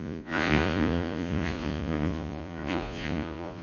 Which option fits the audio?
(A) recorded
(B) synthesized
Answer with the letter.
B